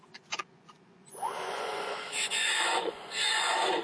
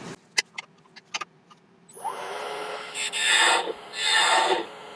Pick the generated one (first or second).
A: first